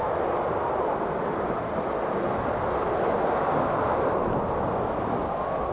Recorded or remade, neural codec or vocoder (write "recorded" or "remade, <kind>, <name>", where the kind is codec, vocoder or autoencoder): recorded